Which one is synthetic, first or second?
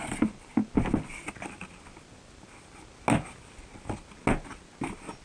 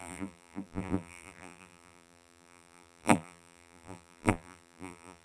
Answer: second